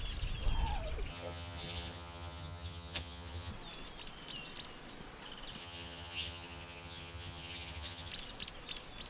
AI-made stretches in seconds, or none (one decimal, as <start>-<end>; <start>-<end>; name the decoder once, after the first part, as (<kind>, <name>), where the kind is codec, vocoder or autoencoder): 1.1-3.5 (vocoder, HiFi-GAN); 5.6-8.1